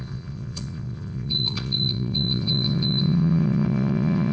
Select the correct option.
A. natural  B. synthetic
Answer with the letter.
B